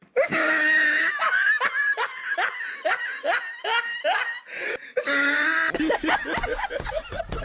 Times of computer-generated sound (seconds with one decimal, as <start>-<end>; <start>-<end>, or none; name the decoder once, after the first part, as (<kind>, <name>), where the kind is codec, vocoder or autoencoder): none